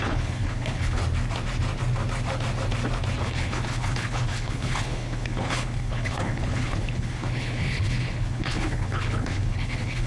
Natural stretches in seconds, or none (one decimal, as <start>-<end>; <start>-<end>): 1.0-3.2